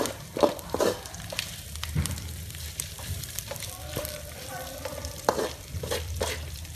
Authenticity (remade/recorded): remade